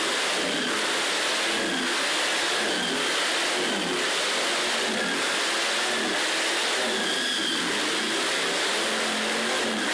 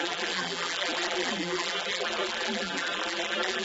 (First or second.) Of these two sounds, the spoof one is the second